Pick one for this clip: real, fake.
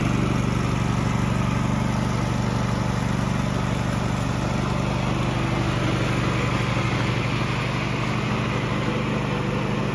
real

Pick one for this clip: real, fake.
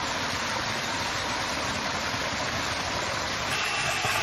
real